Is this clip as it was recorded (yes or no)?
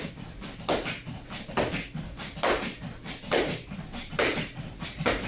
yes